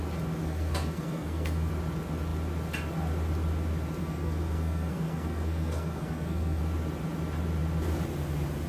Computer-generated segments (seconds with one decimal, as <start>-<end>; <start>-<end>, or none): 0.4-1.7; 4.0-6.6